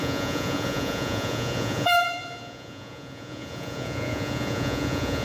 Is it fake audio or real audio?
fake